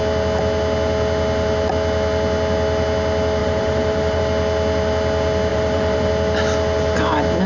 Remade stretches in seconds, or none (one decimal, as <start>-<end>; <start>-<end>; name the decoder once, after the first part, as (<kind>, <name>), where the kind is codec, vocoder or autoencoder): 3.4-4.2 (vocoder, BigVGAN v2); 5.5-6.1

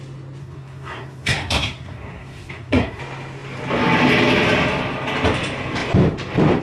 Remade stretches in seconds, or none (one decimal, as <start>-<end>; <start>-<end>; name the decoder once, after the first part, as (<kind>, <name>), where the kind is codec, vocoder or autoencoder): 0.4-3.0 (codec, SNAC)

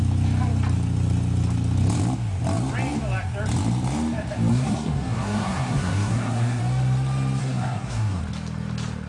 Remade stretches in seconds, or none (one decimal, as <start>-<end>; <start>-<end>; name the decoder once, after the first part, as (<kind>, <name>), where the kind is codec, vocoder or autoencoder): 4.5-6.6 (codec, SNAC); 7.4-8.2